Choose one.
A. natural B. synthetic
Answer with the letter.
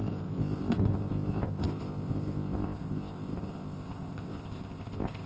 B